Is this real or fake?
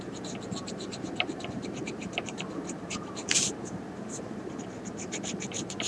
fake